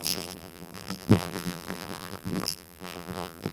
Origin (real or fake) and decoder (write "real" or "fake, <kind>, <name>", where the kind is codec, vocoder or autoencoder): fake, vocoder, BigVGAN v2